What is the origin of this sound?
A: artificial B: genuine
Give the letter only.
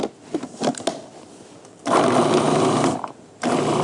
B